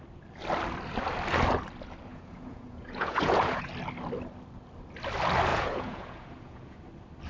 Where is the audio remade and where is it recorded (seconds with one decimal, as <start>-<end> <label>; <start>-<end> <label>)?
0.0-2.1 recorded; 2.1-3.7 remade; 3.7-5.5 recorded; 5.5-6.8 remade; 6.8-7.3 recorded